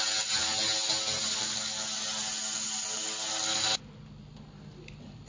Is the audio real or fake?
real